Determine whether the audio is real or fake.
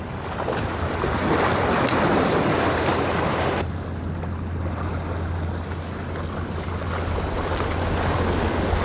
real